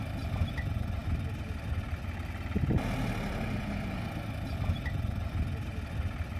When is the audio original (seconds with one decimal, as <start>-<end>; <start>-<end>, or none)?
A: 0.0-6.4